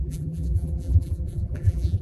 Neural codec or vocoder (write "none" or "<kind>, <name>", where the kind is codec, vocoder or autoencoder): vocoder, BigVGAN v2